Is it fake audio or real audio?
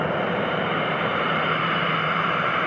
fake